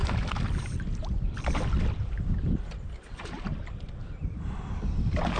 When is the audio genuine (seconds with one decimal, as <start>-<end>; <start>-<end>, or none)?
0.0-3.2; 4.0-4.7